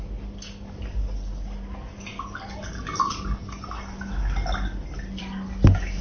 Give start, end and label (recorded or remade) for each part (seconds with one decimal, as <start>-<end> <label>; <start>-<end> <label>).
0.0-6.0 recorded